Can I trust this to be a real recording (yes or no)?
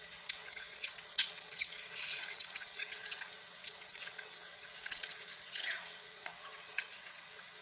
no